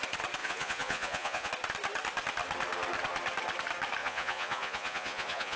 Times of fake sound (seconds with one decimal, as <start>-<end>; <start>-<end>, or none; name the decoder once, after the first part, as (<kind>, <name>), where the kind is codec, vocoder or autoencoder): 0.4-1.5 (vocoder, Vocos); 4.0-5.6